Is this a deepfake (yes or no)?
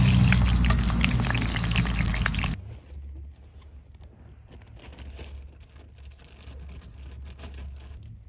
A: no